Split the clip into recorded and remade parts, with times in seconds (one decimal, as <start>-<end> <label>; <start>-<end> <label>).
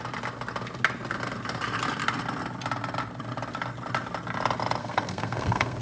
0.0-4.8 recorded; 4.8-5.8 remade